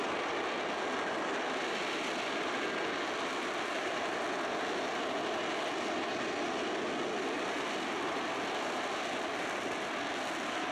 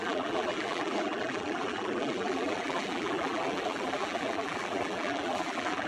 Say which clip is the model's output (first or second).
second